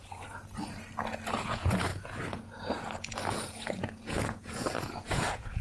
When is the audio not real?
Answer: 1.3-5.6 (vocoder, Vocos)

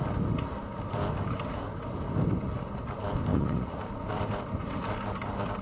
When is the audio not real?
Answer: 3.3-3.8 (vocoder, Vocos)